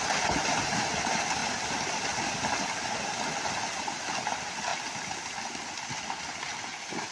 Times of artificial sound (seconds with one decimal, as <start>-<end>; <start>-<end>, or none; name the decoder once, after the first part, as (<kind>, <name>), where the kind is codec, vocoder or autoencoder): none